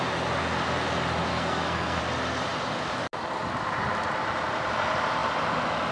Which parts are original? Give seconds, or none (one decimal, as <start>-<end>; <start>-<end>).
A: 0.0-1.3; 2.0-5.9